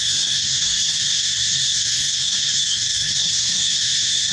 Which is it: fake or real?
fake